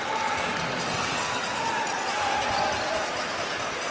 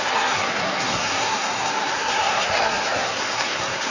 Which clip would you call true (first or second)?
first